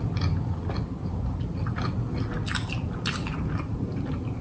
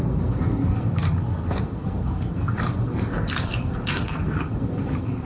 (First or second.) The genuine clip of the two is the first